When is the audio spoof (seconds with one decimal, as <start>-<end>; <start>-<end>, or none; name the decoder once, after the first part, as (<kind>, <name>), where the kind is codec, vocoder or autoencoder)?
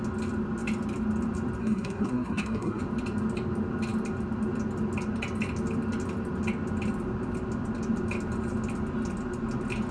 1.6-2.8 (codec, SNAC)